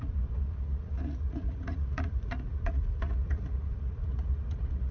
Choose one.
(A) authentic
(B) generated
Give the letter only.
B